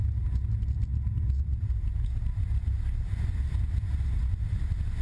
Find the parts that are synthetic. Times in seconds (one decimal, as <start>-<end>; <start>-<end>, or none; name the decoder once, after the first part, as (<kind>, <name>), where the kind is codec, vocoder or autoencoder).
none